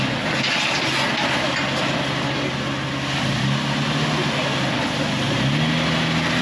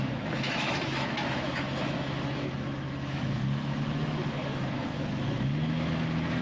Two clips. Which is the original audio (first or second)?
first